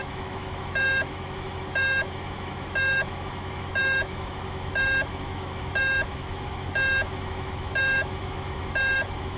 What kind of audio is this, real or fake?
fake